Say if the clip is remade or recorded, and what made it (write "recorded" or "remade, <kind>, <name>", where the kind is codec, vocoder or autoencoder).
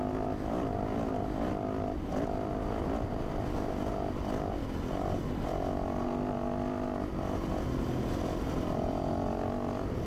recorded